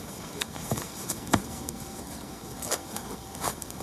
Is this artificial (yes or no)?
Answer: yes